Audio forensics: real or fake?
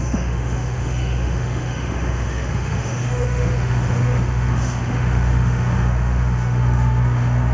fake